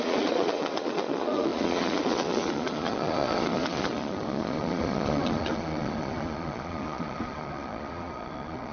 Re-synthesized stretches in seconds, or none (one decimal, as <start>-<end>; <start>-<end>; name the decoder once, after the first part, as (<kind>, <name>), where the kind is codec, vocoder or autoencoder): 0.0-8.7 (vocoder, Vocos)